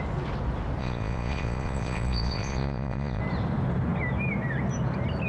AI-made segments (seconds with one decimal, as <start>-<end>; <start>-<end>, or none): 0.8-3.2